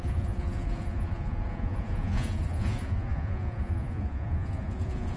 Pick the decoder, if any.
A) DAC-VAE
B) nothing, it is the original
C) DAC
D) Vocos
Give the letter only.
D